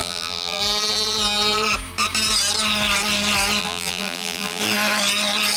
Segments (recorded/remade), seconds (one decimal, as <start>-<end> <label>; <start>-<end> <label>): 0.0-0.6 remade; 0.6-3.6 recorded; 3.6-4.6 remade; 4.6-5.6 recorded